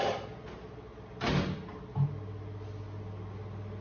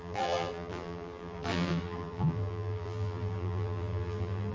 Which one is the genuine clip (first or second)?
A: first